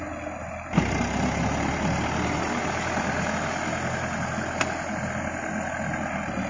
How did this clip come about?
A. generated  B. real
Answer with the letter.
B